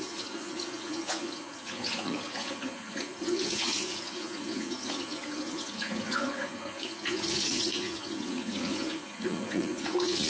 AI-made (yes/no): yes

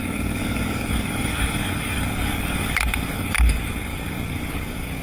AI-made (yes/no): yes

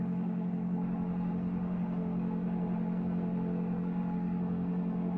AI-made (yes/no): yes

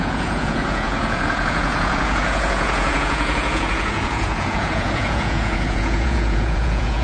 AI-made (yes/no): yes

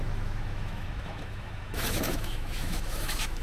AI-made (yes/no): yes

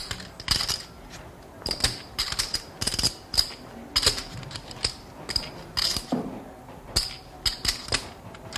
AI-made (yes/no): no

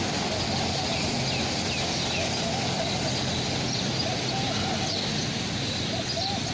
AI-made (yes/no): no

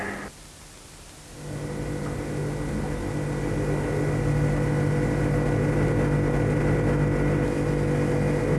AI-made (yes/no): no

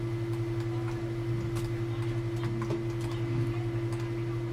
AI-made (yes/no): no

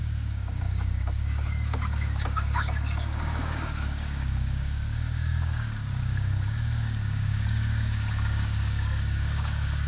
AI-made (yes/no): yes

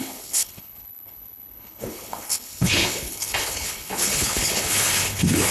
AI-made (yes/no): yes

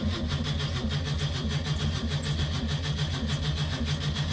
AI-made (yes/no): no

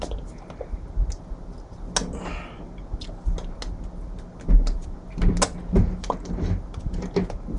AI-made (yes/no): no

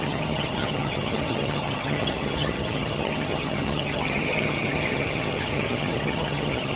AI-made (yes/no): yes